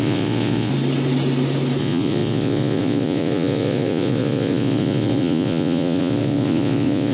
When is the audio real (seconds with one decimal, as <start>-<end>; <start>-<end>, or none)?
0.7-1.8

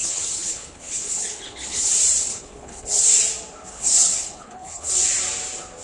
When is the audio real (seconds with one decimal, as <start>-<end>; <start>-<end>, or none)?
1.9-2.3; 3.0-3.7; 4.9-5.8

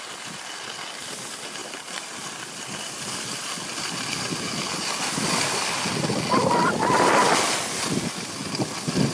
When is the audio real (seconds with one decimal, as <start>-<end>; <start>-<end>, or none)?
0.0-9.1

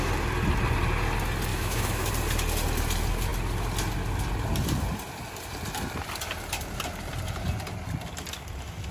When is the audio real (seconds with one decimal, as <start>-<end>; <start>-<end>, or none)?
0.0-1.5; 2.1-8.9

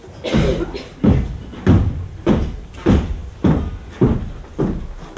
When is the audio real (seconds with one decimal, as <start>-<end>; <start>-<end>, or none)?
0.0-5.2